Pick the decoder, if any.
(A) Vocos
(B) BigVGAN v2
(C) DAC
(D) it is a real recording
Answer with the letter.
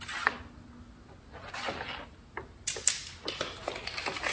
D